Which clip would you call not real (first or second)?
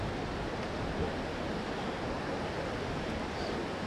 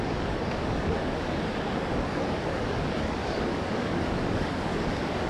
second